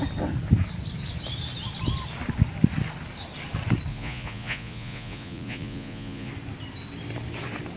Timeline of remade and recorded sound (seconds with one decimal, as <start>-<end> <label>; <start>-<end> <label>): 0.0-3.9 recorded; 3.9-6.3 remade; 6.3-7.8 recorded